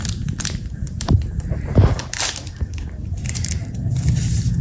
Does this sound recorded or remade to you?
remade